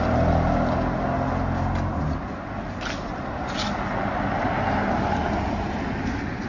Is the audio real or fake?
real